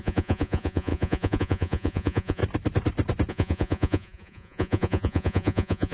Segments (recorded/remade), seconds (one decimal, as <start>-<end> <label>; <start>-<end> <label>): 0.0-2.4 remade; 2.4-3.3 recorded; 3.3-5.9 remade